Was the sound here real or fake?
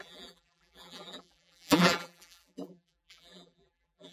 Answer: fake